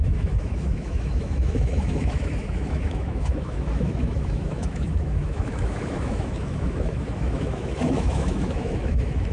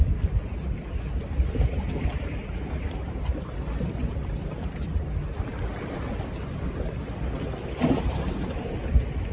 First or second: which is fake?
first